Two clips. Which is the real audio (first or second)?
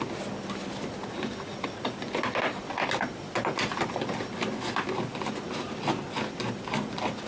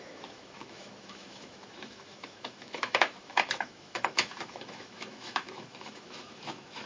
first